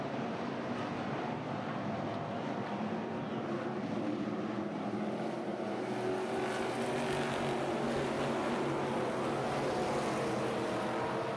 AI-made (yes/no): no